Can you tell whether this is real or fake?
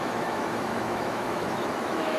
fake